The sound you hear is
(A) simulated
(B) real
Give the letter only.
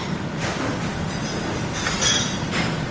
B